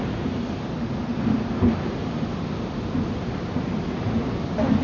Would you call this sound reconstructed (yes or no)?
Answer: no